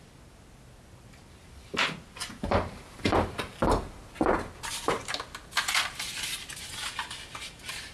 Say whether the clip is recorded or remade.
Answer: recorded